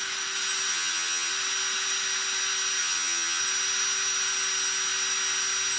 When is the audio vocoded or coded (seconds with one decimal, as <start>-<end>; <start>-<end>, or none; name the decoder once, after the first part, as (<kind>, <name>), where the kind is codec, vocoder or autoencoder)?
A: 0.7-1.3 (vocoder, HiFi-GAN); 2.8-3.4